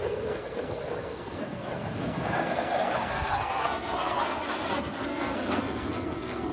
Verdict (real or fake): fake